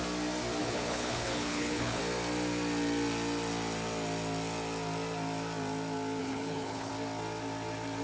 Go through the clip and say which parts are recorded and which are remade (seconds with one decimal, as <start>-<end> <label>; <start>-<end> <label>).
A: 0.0-0.6 recorded; 0.6-2.0 remade; 2.0-6.2 recorded; 6.2-6.9 remade; 6.9-8.0 recorded